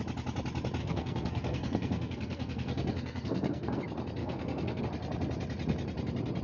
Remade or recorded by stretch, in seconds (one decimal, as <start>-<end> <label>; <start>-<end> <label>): 0.0-0.8 recorded; 0.8-3.8 remade; 3.8-4.2 recorded; 4.2-4.8 remade; 4.8-6.4 recorded